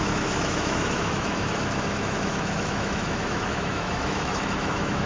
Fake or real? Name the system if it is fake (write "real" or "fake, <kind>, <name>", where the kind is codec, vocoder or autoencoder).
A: fake, autoencoder, DAC-VAE